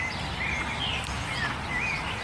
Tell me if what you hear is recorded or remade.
recorded